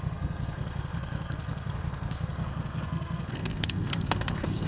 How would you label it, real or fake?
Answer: fake